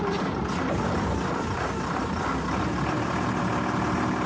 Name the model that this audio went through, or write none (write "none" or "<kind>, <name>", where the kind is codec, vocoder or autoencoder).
none